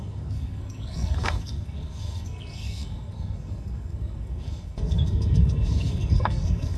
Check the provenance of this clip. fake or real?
fake